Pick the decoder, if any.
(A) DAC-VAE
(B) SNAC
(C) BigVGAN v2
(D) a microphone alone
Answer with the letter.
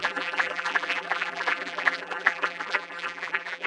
C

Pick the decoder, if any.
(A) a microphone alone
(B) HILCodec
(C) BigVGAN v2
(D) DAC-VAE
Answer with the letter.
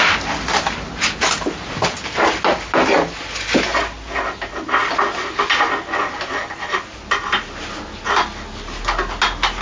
A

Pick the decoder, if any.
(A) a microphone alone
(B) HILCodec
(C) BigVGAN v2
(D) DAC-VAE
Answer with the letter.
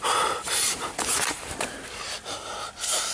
C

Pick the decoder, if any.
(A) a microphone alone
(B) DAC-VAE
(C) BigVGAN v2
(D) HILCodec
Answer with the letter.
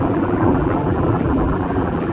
C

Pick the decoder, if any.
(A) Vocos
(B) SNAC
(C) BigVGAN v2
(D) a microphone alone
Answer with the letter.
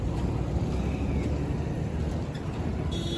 D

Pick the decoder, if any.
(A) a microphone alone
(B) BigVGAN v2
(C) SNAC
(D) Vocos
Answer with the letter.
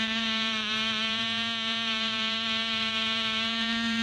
B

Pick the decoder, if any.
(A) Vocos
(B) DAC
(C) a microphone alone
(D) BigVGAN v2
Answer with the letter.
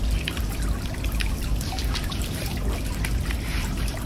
D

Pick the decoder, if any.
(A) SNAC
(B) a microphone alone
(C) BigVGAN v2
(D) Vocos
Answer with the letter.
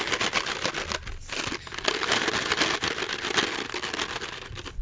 B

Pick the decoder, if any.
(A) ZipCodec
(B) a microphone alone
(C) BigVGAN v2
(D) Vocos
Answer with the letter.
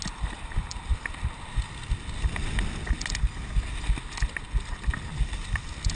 B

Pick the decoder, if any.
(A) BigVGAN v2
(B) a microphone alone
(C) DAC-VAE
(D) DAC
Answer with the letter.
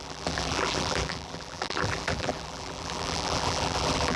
A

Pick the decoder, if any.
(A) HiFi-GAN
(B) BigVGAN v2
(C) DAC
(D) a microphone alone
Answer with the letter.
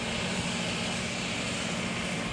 D